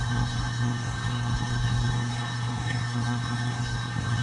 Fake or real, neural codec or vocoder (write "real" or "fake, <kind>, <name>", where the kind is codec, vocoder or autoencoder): fake, codec, SNAC